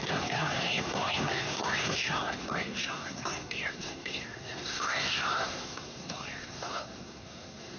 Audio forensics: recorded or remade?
remade